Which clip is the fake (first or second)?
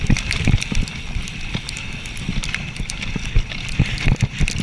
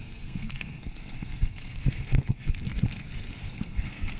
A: second